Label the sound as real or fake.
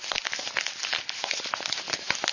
real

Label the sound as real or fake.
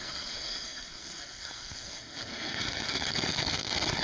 fake